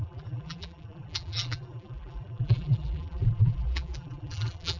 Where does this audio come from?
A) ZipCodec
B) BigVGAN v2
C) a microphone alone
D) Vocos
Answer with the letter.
B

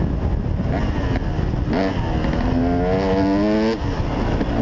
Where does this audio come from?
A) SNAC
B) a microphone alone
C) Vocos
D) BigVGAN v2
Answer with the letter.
B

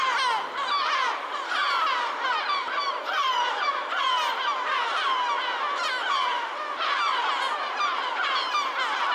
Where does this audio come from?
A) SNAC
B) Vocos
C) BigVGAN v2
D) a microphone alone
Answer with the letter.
D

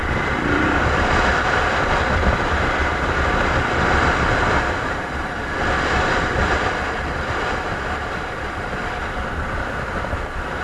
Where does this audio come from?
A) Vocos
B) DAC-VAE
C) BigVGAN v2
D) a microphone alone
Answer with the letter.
C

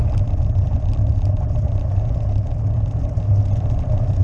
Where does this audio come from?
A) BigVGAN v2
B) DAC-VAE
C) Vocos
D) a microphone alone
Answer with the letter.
D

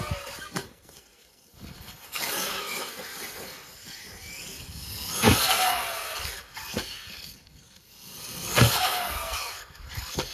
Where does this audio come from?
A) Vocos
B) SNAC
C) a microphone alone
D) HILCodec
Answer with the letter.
B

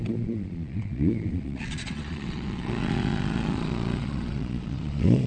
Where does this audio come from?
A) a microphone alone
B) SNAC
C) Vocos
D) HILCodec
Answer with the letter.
C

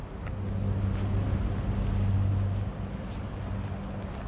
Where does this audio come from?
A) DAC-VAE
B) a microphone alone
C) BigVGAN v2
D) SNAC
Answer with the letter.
B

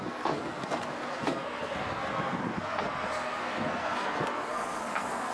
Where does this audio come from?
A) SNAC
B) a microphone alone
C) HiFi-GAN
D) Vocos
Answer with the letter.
A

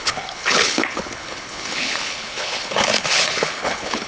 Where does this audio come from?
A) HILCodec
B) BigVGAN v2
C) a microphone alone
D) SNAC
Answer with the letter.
A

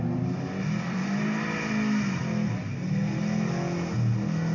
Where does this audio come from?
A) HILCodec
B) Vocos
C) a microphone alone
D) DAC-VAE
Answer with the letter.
C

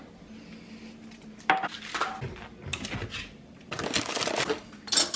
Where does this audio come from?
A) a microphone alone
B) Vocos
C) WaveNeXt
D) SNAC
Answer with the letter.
A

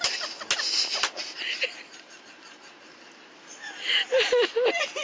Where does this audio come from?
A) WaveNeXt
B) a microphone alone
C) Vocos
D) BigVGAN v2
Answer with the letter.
B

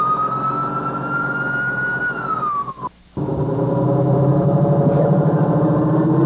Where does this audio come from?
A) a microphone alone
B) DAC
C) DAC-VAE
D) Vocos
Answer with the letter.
A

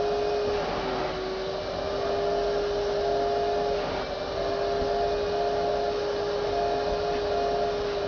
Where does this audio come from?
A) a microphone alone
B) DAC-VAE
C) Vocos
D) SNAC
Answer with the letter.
A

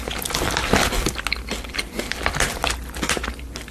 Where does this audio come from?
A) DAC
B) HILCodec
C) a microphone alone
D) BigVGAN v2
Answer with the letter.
C